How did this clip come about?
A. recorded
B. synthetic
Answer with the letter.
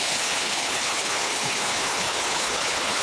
B